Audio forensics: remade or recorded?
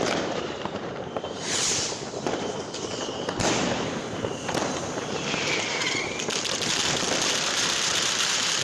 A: remade